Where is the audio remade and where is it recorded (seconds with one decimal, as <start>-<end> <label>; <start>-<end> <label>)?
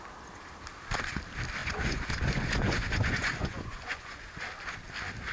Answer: 0.0-1.6 recorded; 1.6-4.4 remade; 4.4-5.3 recorded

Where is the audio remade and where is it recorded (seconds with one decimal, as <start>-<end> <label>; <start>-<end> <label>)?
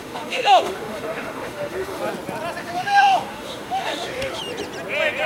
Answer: 0.0-2.0 remade; 2.0-2.6 recorded; 2.6-4.4 remade; 4.4-5.3 recorded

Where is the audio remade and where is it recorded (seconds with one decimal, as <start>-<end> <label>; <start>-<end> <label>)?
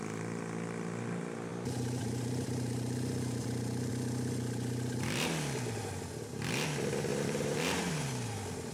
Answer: 0.0-7.1 recorded; 7.1-7.9 remade; 7.9-8.7 recorded